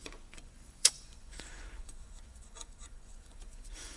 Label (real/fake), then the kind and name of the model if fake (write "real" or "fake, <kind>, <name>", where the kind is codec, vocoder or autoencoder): fake, vocoder, Vocos